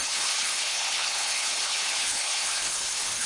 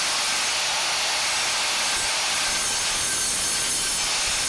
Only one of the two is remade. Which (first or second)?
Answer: first